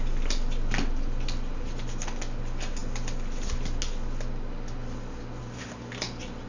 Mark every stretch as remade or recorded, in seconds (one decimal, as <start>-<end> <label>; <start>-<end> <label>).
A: 0.0-6.5 recorded